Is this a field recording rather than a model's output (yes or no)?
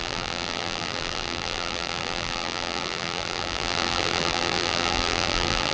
no